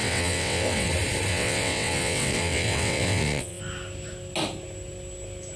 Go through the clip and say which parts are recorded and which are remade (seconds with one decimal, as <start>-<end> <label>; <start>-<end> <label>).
0.0-0.9 remade; 0.9-1.3 recorded; 1.3-3.6 remade; 3.6-5.6 recorded